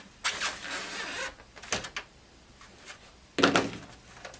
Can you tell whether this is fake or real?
real